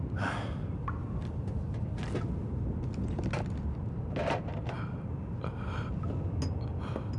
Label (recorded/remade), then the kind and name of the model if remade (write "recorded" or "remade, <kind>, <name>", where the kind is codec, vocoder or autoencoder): recorded